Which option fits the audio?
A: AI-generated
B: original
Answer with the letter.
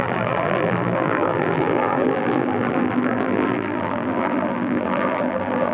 A